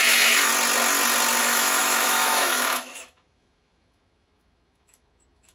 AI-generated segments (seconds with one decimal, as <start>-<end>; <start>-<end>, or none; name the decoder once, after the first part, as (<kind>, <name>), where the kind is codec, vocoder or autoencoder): 0.0-0.5 (autoencoder, DAC-VAE); 1.4-5.5